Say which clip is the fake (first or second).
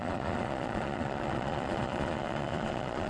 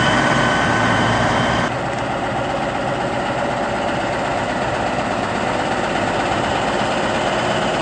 first